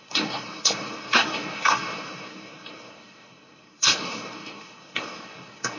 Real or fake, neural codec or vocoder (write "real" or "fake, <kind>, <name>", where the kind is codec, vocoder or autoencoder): fake, codec, SNAC